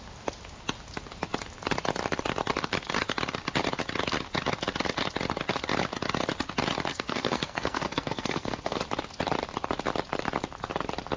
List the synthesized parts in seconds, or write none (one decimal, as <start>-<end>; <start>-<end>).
6.9-8.8